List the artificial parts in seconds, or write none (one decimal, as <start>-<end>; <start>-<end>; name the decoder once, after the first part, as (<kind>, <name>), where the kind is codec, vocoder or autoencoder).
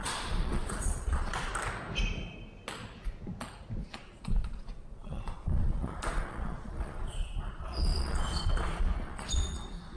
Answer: 0.0-1.5 (vocoder, Vocos); 3.8-10.0